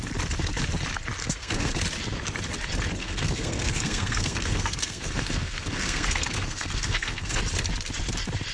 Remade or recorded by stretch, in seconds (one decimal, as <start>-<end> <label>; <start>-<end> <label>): 0.0-1.2 recorded; 1.2-1.7 remade; 1.7-3.0 recorded; 3.0-7.4 remade; 7.4-8.5 recorded